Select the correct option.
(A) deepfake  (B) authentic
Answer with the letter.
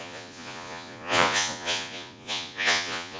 A